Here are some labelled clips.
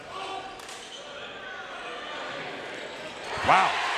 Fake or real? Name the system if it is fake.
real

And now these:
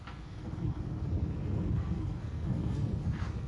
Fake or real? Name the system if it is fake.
fake, codec, SNAC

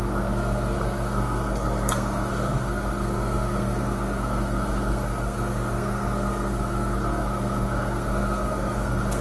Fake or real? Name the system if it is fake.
fake, codec, SNAC